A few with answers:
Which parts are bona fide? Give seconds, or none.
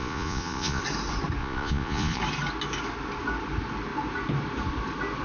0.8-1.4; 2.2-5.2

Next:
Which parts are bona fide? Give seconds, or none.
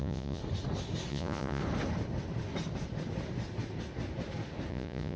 0.4-1.1; 1.6-4.7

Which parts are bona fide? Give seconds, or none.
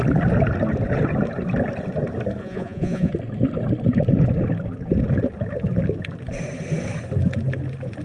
0.0-2.4; 3.1-8.0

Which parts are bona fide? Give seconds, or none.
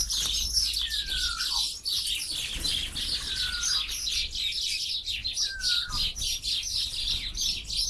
0.0-4.7; 5.2-7.9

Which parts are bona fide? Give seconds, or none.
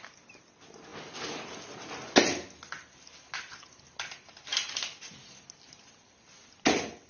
0.0-7.1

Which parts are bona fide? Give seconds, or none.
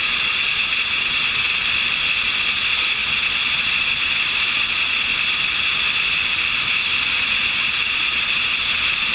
1.6-2.4; 5.1-7.1